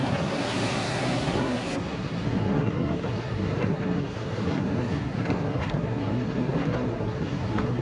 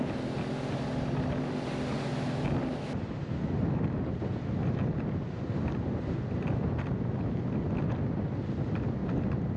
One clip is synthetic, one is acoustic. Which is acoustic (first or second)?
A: second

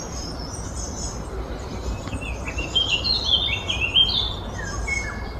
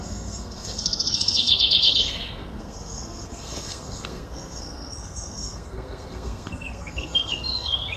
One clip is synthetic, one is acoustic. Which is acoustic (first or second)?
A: first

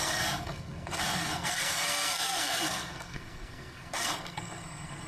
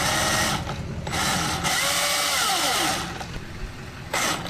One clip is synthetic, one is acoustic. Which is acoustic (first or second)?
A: second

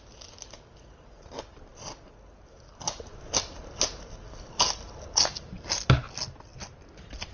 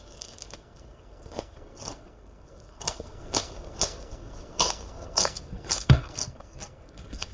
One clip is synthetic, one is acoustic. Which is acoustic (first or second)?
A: first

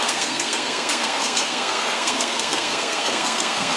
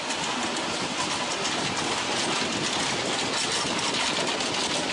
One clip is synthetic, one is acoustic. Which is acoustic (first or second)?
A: second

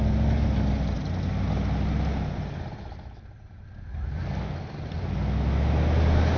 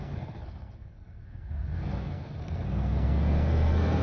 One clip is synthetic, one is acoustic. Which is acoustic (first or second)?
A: first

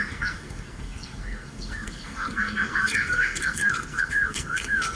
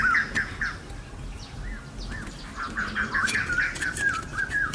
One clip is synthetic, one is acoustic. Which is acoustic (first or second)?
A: second